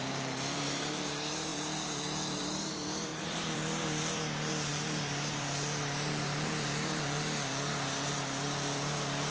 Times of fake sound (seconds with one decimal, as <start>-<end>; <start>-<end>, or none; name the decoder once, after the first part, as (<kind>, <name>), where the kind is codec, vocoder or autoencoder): 0.0-9.3 (vocoder, BigVGAN v2)